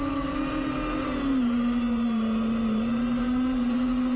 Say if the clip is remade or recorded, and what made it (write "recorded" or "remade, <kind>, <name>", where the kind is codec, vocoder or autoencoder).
recorded